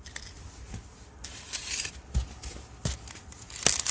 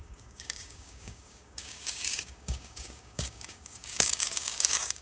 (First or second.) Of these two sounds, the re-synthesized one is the second